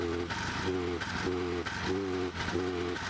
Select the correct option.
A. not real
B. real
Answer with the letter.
B